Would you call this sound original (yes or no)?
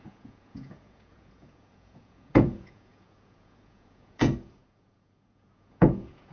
no